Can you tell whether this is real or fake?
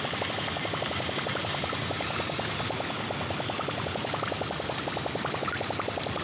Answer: real